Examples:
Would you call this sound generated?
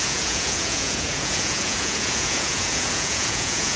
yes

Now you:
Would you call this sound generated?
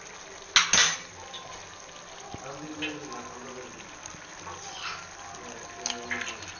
no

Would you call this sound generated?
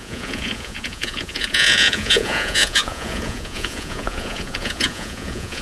yes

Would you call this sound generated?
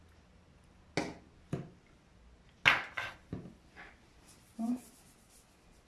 no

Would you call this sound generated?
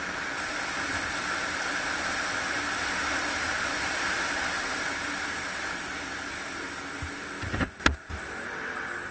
no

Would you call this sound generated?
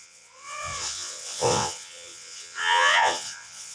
yes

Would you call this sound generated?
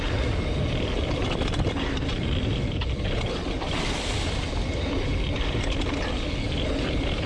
no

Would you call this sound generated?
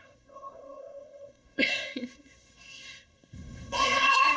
yes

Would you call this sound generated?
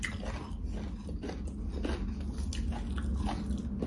no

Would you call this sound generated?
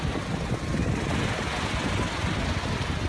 no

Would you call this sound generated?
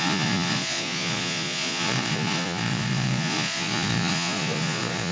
yes